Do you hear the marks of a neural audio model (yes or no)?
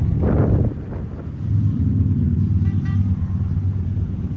no